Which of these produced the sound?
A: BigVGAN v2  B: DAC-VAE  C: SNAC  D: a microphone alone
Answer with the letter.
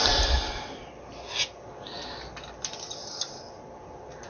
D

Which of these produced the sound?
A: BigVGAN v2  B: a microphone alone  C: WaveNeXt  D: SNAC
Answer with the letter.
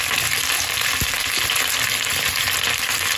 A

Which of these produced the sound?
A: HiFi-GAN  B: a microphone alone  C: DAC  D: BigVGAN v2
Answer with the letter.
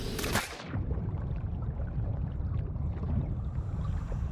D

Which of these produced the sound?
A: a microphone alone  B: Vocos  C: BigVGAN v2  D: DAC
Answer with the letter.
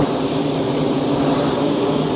A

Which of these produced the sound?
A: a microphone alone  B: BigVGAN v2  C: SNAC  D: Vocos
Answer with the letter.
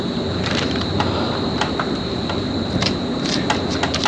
B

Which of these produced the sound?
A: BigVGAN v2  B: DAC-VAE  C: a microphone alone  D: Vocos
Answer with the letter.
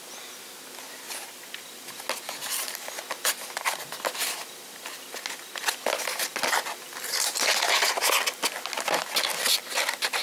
C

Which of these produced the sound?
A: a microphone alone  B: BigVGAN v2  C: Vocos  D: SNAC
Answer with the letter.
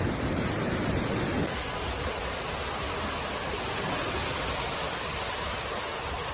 A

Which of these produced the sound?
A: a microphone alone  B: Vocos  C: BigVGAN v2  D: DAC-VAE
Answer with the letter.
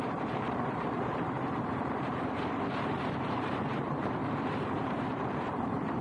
C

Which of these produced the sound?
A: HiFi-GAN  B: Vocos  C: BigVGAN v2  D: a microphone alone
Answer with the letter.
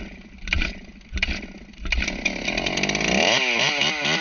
D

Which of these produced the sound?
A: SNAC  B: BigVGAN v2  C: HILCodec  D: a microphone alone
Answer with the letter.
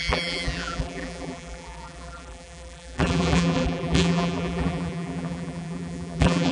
B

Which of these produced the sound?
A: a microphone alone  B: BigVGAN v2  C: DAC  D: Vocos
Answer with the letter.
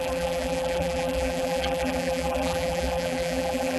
B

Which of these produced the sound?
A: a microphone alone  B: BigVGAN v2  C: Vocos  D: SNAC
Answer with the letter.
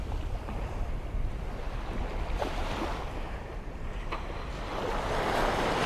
A